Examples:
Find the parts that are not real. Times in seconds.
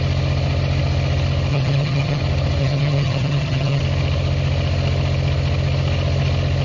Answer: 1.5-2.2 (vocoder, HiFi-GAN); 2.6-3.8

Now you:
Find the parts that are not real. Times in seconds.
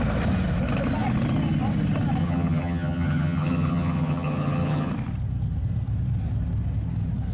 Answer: 2.2-4.9 (vocoder, HiFi-GAN)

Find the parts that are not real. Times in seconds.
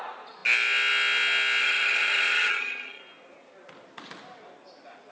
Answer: 1.6-3.0 (vocoder, HiFi-GAN)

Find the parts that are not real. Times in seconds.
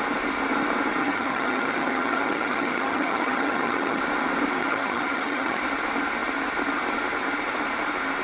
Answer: 1.0-4.0 (vocoder, HiFi-GAN); 4.6-5.6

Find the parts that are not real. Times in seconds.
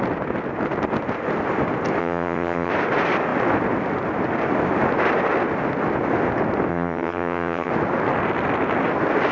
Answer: 2.0-2.7 (vocoder, HiFi-GAN); 6.7-7.7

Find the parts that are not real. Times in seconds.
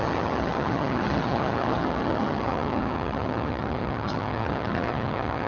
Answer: 0.0-5.5 (vocoder, HiFi-GAN)